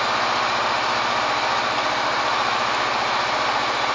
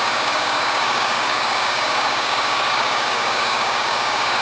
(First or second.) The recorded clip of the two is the first